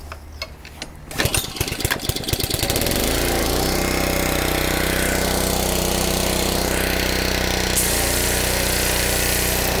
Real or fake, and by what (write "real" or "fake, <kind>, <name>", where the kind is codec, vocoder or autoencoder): real